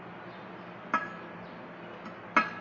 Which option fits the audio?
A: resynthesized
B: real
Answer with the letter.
B